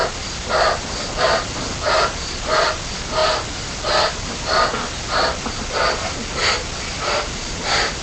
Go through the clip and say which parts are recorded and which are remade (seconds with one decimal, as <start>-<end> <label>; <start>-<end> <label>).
0.0-8.0 recorded